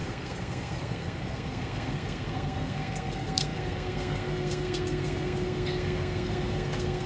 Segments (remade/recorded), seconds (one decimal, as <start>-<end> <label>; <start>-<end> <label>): 0.0-7.1 remade